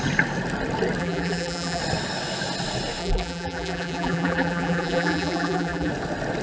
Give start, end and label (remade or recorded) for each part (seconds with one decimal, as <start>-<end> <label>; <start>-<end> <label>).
0.0-1.0 recorded; 1.0-1.8 remade; 1.8-3.0 recorded; 3.0-5.9 remade; 5.9-6.4 recorded